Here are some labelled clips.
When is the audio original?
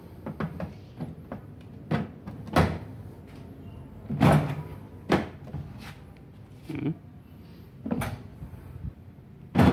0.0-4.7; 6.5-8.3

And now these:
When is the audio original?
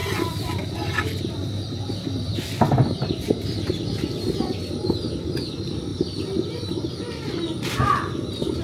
3.7-8.6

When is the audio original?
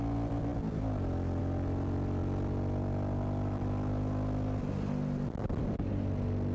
0.0-6.5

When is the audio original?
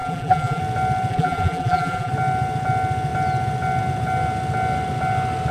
0.6-1.1; 2.1-5.5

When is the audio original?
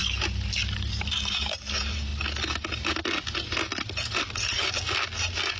0.0-1.1; 2.1-5.6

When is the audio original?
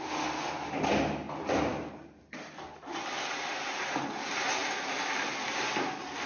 0.0-1.7; 2.6-4.6; 5.6-6.3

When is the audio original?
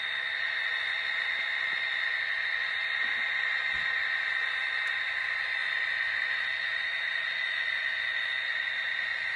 0.0-9.4